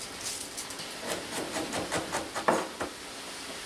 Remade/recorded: recorded